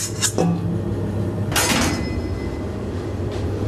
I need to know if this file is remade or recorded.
recorded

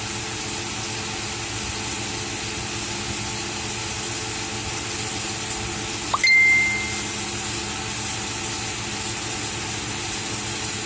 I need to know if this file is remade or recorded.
recorded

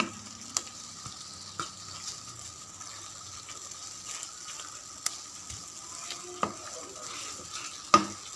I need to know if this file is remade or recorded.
recorded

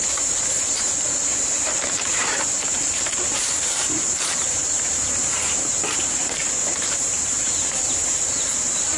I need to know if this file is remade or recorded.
remade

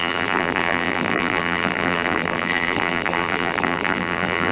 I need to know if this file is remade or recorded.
remade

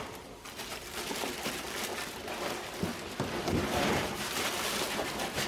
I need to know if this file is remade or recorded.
remade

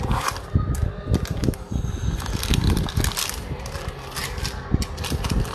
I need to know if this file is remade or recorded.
recorded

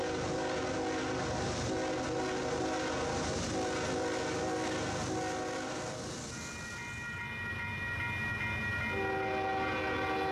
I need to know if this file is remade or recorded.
recorded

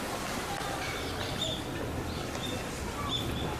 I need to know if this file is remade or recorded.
recorded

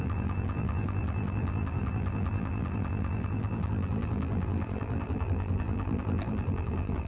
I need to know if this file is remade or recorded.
remade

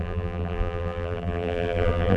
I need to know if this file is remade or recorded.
remade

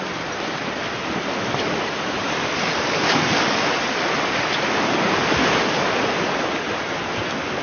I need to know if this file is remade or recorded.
recorded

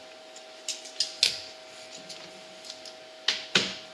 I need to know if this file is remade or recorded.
recorded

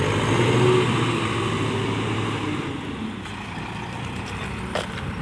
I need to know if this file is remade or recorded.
recorded